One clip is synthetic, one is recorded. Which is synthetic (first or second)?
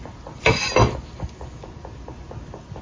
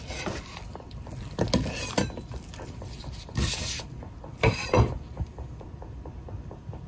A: second